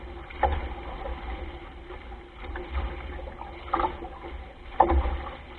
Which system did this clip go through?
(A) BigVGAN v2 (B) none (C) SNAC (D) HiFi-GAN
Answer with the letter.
B